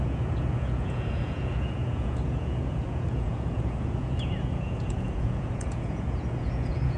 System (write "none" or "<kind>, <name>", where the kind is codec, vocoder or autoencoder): vocoder, Vocos